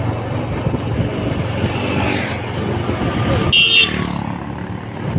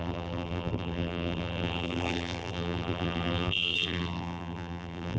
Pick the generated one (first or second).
second